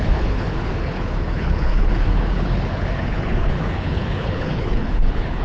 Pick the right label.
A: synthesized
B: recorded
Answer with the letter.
A